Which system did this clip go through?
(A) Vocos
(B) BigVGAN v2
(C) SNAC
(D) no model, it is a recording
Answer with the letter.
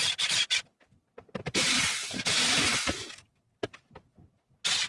D